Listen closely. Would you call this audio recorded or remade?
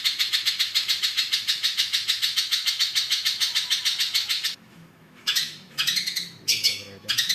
remade